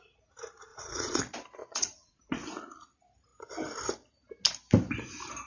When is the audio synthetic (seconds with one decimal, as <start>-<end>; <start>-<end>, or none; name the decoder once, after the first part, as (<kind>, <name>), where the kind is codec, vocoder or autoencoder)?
0.7-1.2 (vocoder, Vocos); 1.6-2.4